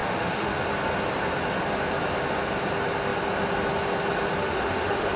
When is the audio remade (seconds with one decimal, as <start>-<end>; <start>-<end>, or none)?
0.0-0.6; 4.4-5.2

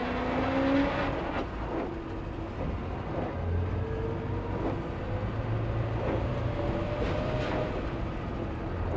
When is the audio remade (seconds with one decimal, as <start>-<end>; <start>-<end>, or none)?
none